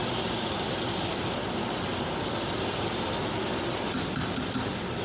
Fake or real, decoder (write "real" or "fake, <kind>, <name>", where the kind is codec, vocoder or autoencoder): real